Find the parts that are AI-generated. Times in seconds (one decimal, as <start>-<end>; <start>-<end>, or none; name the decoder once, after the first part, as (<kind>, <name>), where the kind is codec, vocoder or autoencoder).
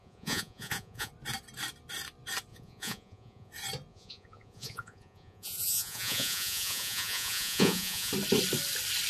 0.0-1.1 (vocoder, Vocos); 2.5-3.5; 3.9-8.1